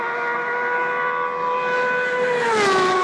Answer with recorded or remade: recorded